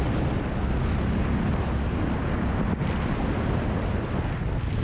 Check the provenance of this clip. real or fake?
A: real